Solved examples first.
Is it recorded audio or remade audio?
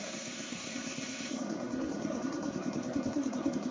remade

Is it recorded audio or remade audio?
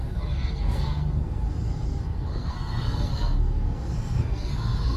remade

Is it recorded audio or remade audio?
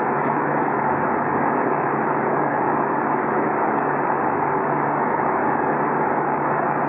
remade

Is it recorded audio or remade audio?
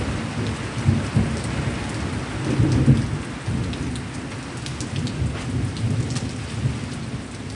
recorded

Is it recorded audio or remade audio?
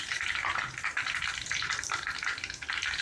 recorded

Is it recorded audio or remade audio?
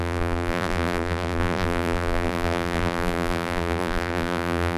remade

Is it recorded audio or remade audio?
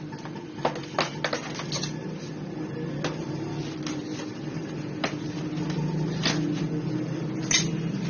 recorded